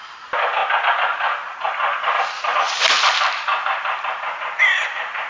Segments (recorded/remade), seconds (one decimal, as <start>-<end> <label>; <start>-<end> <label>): 0.0-5.3 recorded